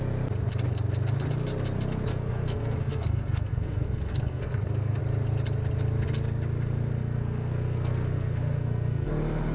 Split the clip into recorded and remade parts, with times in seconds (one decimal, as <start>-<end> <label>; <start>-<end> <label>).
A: 0.0-2.1 recorded; 2.1-5.0 remade; 5.0-7.0 recorded; 7.0-9.1 remade; 9.1-9.5 recorded